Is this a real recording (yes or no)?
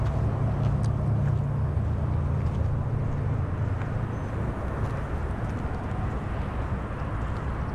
yes